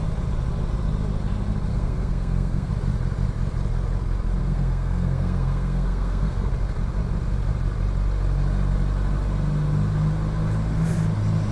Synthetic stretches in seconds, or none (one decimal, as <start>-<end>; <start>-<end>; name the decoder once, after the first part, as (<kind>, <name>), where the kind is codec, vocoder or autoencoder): 1.7-2.7 (codec, SNAC); 4.4-6.5